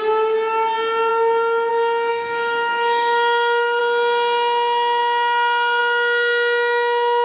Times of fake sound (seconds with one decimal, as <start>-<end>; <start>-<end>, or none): 2.1-3.8